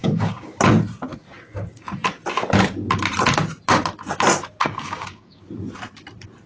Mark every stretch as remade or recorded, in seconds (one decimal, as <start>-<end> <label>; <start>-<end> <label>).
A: 0.0-0.6 remade; 0.6-4.6 recorded; 4.6-5.4 remade; 5.4-6.5 recorded